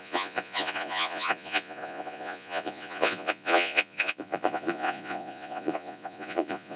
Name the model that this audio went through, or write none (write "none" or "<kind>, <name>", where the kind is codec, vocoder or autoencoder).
vocoder, Vocos